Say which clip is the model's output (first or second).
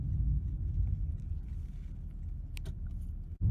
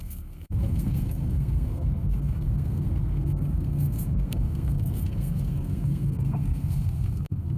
second